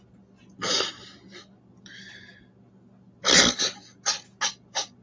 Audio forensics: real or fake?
real